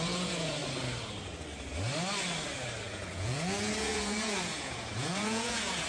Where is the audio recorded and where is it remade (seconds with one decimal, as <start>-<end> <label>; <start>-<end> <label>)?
0.0-0.6 remade; 0.6-2.8 recorded; 2.8-5.9 remade